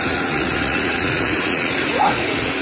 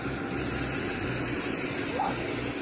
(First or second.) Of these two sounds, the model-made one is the first